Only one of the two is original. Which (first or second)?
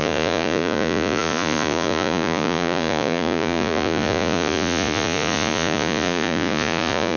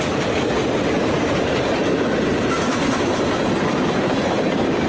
second